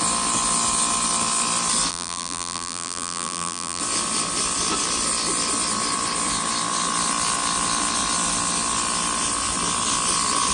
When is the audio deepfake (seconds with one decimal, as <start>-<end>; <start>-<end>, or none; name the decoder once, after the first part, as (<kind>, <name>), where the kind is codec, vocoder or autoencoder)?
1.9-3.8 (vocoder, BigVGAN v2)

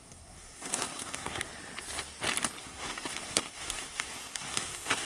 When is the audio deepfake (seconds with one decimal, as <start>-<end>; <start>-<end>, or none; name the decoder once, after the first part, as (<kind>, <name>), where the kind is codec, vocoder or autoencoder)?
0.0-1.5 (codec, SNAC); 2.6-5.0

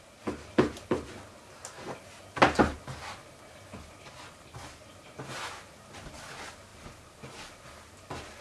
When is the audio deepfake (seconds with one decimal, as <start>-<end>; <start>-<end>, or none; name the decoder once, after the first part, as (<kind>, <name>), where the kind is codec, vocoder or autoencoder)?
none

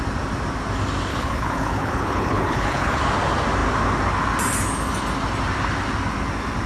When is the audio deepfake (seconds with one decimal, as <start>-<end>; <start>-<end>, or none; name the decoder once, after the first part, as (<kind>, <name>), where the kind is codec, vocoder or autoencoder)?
1.1-3.0 (codec, HILCodec)

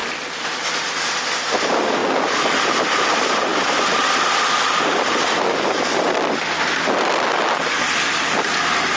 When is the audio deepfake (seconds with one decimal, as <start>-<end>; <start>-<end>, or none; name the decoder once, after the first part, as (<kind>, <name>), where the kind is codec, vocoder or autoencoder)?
0.0-2.0 (vocoder, BigVGAN v2); 2.6-9.0

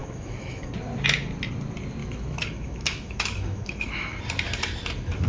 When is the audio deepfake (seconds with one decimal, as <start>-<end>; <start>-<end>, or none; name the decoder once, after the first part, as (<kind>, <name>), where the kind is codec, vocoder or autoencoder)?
0.0-0.7 (autoencoder, DAC-VAE); 2.0-4.2